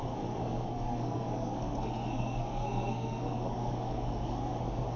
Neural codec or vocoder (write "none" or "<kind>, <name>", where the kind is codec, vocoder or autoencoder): codec, SNAC